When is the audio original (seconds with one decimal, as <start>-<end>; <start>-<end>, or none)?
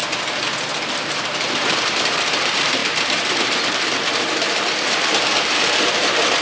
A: 0.0-0.9